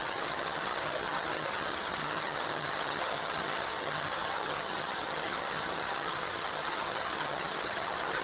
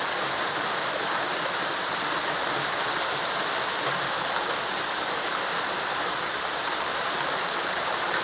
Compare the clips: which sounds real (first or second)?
second